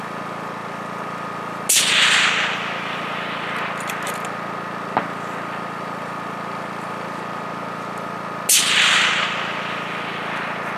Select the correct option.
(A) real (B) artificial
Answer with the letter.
A